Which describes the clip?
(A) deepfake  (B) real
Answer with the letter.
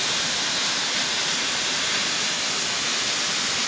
B